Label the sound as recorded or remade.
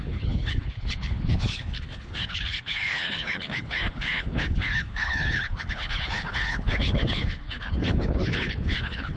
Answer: remade